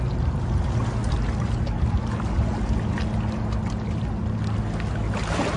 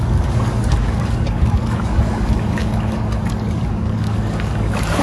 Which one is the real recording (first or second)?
first